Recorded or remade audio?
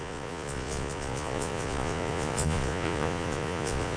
remade